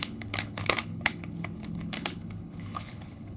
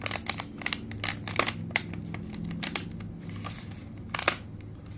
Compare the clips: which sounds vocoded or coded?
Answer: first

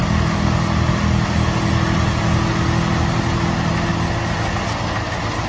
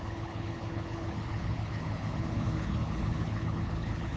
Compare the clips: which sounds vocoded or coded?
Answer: second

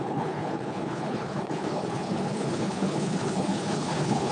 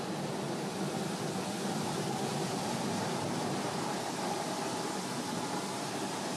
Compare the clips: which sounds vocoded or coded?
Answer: first